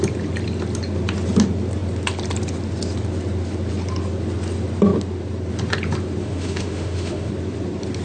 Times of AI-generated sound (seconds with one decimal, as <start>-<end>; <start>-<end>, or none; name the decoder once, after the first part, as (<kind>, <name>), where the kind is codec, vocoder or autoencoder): 6.2-7.3 (autoencoder, DAC-VAE)